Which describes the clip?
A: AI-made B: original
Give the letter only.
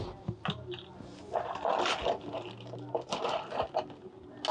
B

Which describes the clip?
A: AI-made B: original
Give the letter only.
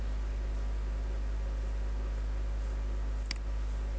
B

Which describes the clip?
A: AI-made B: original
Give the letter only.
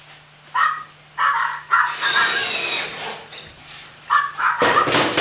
B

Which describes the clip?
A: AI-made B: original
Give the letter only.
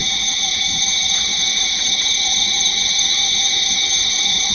A